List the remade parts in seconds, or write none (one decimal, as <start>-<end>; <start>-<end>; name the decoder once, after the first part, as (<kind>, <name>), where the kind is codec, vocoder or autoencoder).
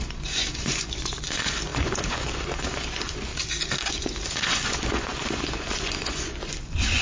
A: 0.0-3.3 (vocoder, Vocos); 3.9-7.0